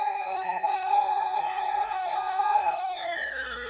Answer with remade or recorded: remade